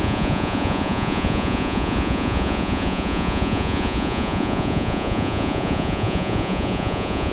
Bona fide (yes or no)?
no